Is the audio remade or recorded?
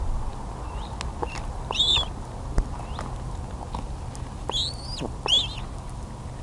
recorded